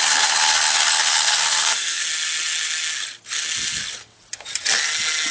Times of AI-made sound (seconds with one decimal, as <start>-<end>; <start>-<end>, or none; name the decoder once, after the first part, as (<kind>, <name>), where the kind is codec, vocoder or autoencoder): 1.1-2.0 (codec, SNAC)